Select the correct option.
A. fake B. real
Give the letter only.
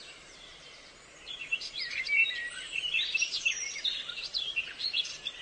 A